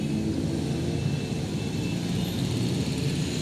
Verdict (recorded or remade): recorded